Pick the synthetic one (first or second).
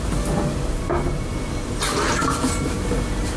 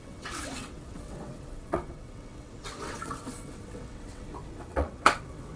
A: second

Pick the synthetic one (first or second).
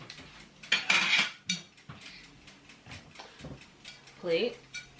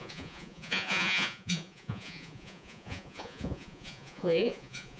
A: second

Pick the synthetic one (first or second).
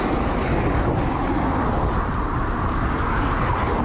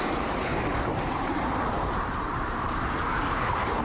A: second